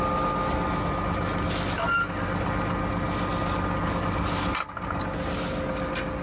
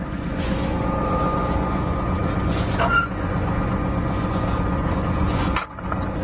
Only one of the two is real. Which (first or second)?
first